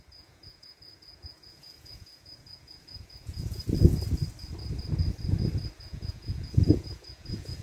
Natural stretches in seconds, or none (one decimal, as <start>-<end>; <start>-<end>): 3.6-5.8